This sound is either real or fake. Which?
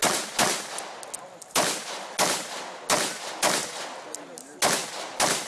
real